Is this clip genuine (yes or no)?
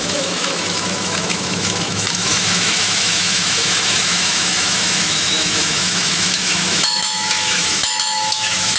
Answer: no